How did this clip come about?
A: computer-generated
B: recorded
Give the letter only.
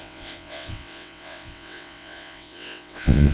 A